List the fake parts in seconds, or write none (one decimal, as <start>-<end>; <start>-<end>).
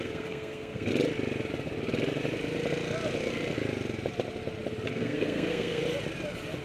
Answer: 0.0-0.9; 4.9-5.8